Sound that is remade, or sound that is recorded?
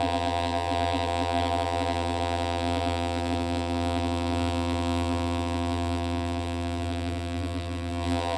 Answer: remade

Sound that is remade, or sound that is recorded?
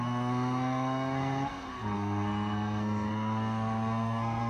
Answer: remade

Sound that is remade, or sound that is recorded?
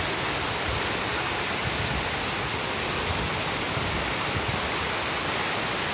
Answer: recorded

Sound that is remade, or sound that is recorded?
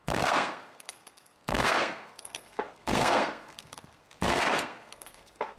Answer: remade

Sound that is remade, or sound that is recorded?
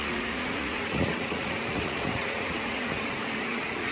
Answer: remade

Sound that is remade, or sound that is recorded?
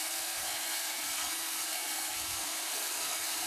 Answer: remade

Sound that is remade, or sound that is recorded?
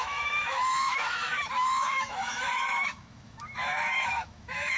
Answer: remade